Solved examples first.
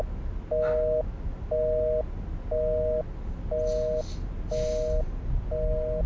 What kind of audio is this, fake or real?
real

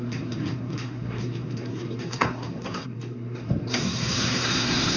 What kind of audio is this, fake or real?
fake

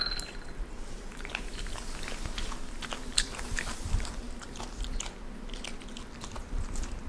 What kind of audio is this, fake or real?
real